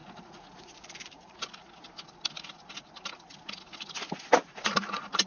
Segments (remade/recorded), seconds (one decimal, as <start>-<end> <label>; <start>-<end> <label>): 0.0-1.4 remade; 1.4-4.5 recorded; 4.5-5.3 remade